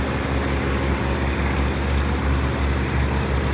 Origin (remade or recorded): recorded